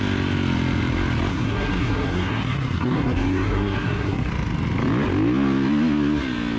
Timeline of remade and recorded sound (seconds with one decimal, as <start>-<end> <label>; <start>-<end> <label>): 0.0-1.3 recorded; 1.3-4.3 remade; 4.3-6.6 recorded